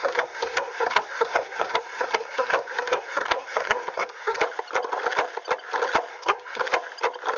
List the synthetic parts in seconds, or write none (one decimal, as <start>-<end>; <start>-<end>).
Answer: 0.0-4.4; 6.1-6.6

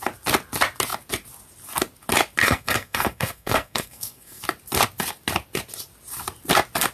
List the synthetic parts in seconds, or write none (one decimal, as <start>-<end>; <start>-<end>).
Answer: 2.4-4.4